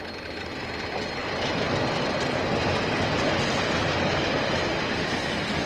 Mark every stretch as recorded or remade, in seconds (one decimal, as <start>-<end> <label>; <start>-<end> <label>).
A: 0.0-1.2 recorded; 1.2-2.4 remade; 2.4-3.8 recorded; 3.8-4.5 remade; 4.5-5.7 recorded